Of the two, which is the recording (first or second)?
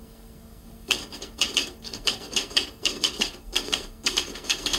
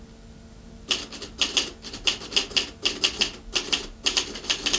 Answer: second